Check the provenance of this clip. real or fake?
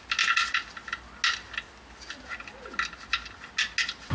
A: real